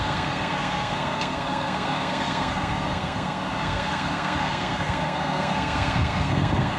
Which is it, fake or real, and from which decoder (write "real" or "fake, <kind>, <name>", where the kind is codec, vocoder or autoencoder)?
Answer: fake, codec, SNAC